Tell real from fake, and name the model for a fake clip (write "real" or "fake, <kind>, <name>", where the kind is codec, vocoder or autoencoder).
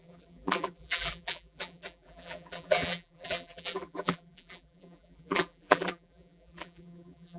fake, vocoder, BigVGAN v2